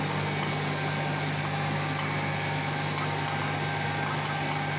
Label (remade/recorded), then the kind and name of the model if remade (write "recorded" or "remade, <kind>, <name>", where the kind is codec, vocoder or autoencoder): recorded